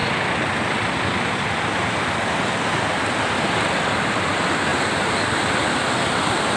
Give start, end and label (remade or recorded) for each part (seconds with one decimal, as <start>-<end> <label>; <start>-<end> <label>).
0.0-4.7 recorded; 4.7-5.5 remade; 5.5-6.6 recorded